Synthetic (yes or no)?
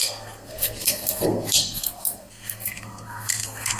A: yes